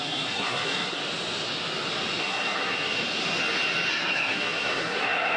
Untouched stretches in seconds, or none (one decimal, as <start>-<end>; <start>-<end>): 1.0-2.2; 3.0-3.9